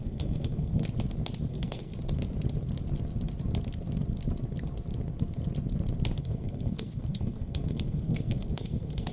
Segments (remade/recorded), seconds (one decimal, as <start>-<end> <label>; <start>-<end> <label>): 0.0-0.8 remade; 0.8-1.5 recorded; 1.5-1.9 remade; 1.9-6.2 recorded; 6.2-9.1 remade